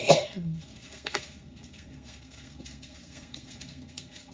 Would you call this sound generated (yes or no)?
yes